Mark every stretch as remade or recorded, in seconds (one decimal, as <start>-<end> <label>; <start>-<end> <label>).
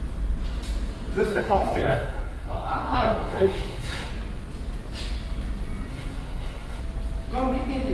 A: 0.0-1.3 recorded; 1.3-4.1 remade; 4.1-5.9 recorded; 5.9-6.8 remade; 6.8-7.9 recorded